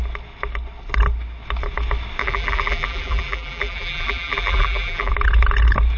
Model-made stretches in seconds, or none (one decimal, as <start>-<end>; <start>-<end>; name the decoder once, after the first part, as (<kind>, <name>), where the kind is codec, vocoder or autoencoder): 2.2-5.1 (vocoder, BigVGAN v2)